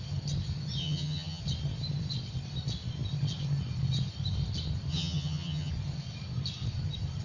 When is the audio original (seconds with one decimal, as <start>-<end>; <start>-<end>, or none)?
0.0-0.8; 1.4-4.9; 5.7-7.2